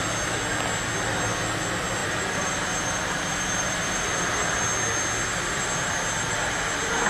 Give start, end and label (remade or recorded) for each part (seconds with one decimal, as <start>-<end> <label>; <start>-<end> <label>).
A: 0.0-2.0 recorded; 2.0-4.6 remade; 4.6-7.1 recorded